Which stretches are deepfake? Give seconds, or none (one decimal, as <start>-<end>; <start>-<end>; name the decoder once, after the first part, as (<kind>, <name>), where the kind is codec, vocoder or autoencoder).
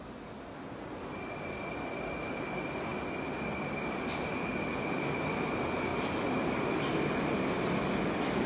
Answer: none